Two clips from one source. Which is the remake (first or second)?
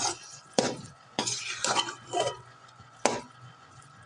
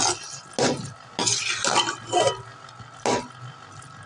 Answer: first